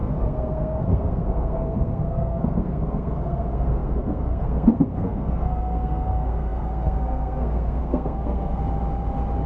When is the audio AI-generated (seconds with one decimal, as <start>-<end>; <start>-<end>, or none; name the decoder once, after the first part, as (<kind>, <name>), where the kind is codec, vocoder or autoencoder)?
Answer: 0.0-8.6 (codec, SNAC)